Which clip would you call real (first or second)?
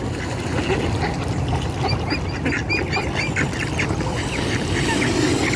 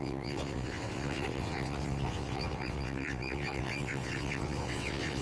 first